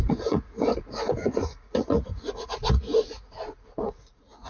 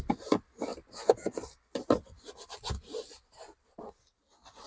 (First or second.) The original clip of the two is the second